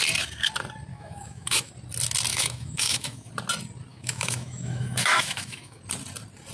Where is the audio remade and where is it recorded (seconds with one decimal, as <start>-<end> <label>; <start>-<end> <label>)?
0.0-0.9 recorded; 0.9-1.7 remade; 1.7-2.3 recorded; 2.3-3.3 remade; 3.3-3.9 recorded; 3.9-5.8 remade; 5.8-6.5 recorded